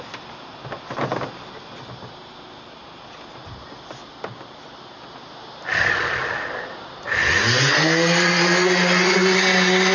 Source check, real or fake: real